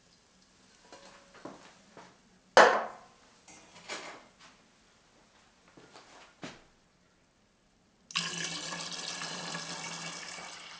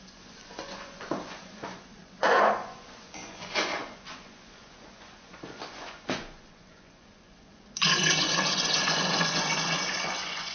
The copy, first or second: second